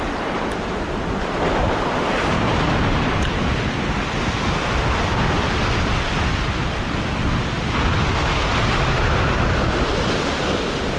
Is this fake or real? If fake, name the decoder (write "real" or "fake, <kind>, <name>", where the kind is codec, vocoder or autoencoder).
real